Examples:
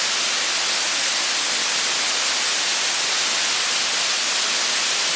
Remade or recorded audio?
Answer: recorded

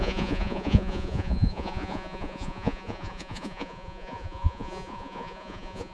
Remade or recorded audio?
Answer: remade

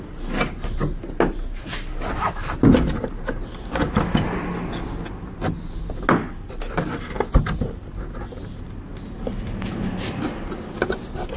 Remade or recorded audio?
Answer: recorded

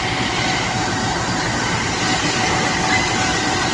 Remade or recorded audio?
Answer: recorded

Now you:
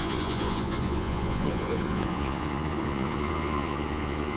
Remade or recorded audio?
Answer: remade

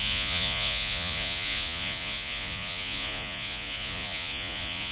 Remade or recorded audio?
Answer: remade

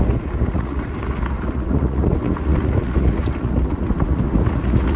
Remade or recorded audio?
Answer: remade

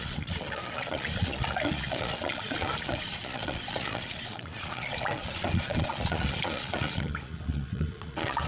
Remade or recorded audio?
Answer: remade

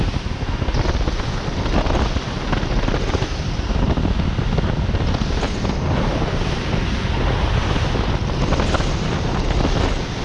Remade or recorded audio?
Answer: recorded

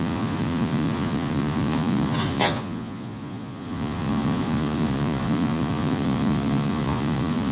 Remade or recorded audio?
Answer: remade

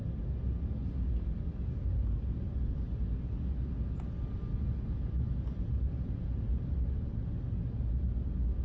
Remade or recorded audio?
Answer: recorded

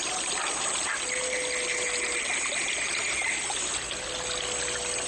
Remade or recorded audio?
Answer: recorded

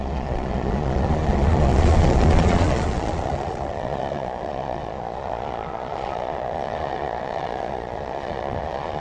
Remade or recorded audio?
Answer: remade